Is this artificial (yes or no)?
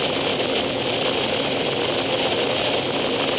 no